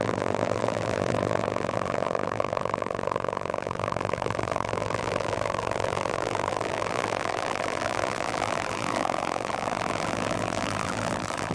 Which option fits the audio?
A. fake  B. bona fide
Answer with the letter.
A